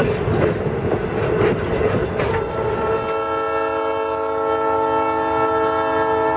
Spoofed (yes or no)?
no